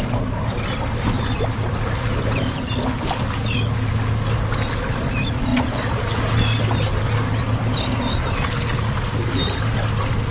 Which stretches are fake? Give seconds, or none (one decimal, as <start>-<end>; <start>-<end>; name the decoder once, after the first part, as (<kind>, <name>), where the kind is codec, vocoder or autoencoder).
none